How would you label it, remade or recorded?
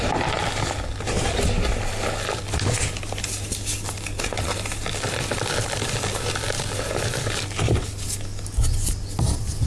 recorded